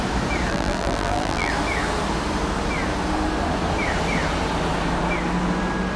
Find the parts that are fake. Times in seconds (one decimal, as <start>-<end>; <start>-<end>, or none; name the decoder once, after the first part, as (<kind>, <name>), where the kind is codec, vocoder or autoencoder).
0.5-1.5 (vocoder, BigVGAN v2)